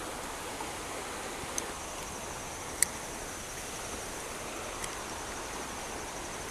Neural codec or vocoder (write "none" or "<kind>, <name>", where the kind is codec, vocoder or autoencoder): none